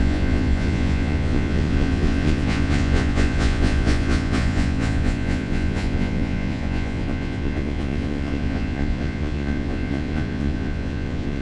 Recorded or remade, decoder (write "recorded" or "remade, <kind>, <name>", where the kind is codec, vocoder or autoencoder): remade, vocoder, Vocos